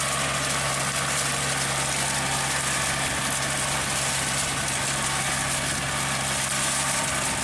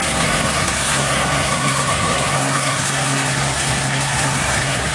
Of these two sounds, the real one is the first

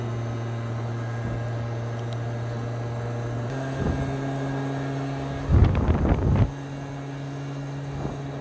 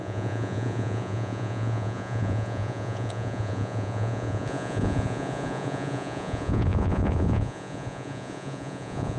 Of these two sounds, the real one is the first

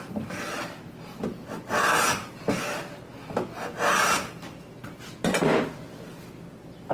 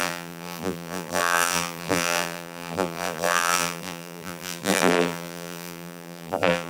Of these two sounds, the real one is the first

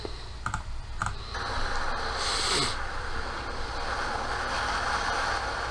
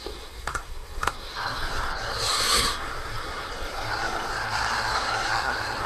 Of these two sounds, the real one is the first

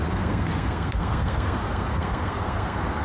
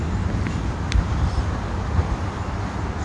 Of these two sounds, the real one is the second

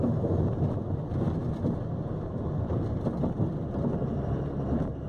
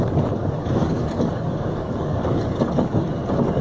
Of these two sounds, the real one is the first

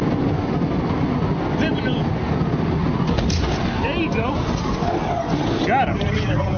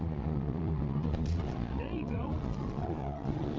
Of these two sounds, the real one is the first